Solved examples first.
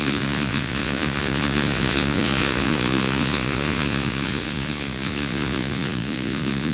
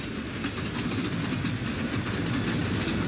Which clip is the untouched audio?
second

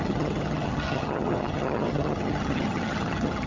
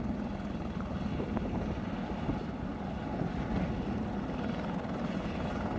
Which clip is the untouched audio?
second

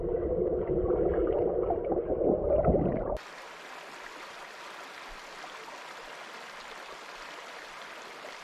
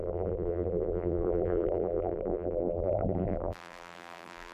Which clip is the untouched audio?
first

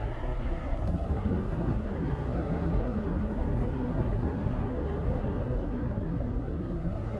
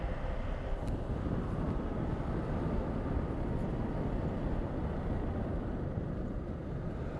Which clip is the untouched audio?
second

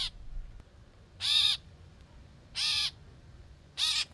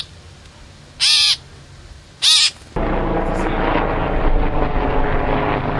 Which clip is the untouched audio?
second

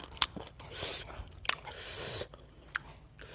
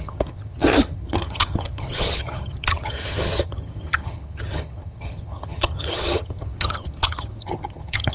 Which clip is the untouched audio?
first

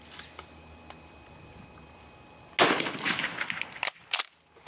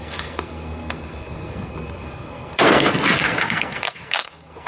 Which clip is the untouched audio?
first